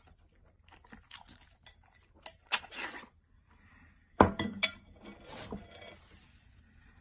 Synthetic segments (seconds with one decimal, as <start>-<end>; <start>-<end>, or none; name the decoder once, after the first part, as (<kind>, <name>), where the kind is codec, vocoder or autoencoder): 2.4-3.1 (vocoder, Vocos)